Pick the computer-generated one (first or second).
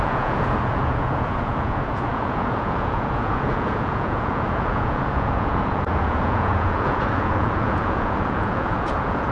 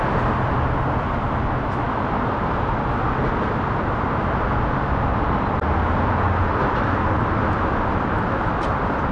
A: first